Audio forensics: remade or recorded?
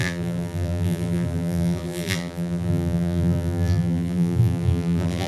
remade